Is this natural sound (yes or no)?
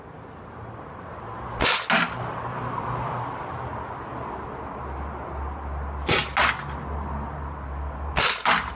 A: yes